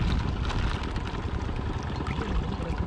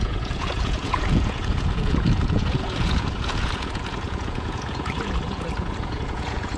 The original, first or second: first